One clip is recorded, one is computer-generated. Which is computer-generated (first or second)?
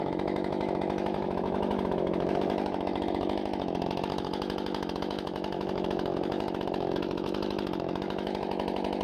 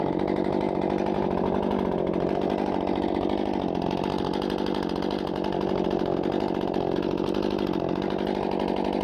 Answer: first